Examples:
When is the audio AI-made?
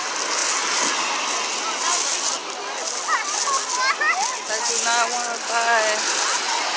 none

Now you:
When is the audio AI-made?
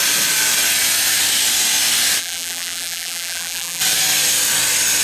2.2-3.8 (vocoder, BigVGAN v2)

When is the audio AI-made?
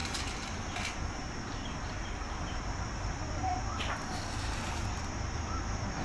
0.0-3.6 (vocoder, BigVGAN v2)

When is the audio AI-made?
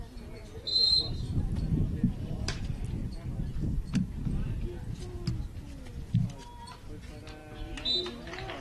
0.7-2.6 (vocoder, BigVGAN v2); 3.0-3.7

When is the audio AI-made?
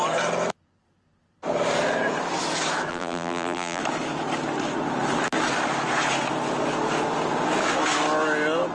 2.9-3.8 (vocoder, BigVGAN v2)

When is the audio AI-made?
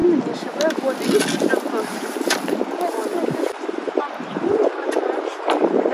1.8-5.9 (vocoder, BigVGAN v2)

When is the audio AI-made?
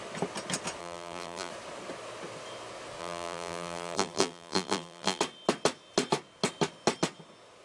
0.8-1.5 (vocoder, BigVGAN v2); 3.0-5.2